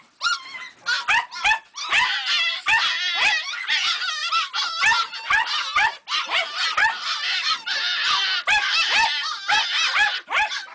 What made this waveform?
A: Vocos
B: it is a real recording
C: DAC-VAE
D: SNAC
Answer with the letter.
B